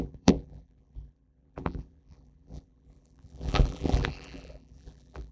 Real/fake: fake